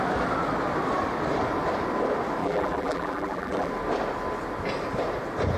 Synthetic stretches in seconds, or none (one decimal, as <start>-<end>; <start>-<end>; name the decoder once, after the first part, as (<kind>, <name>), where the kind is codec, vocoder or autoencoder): 2.4-3.7 (vocoder, BigVGAN v2)